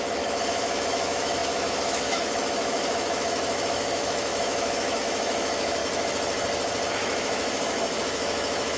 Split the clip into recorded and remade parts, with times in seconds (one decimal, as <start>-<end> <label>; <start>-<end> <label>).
0.0-5.8 remade; 5.8-6.9 recorded; 6.9-8.8 remade